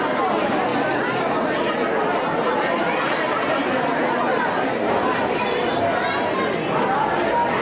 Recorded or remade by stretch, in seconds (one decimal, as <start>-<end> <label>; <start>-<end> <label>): 0.0-3.9 recorded; 3.9-5.0 remade; 5.0-7.6 recorded